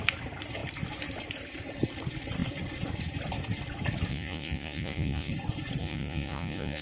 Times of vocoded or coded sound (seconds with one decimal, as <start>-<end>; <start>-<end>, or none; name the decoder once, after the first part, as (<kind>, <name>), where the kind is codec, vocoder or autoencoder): 4.1-5.3 (vocoder, Vocos); 5.8-6.8